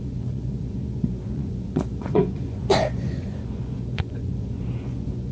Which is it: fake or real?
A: fake